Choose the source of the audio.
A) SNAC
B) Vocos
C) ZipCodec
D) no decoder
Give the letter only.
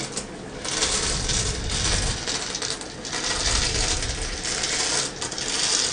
D